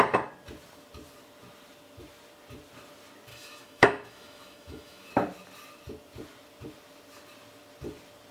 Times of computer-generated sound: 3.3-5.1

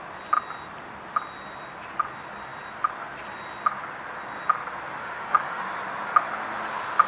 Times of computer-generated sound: 5.0-5.6